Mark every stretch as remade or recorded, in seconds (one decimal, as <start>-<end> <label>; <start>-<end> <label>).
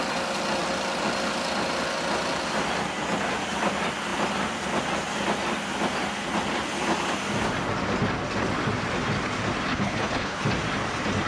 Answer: 0.0-9.7 recorded; 9.7-10.4 remade; 10.4-11.3 recorded